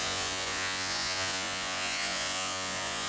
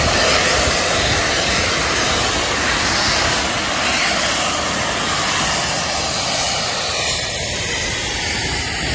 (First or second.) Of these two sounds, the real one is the second